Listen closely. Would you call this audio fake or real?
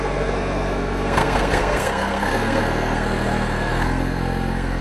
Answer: fake